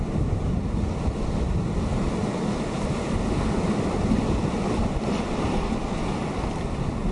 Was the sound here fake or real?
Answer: real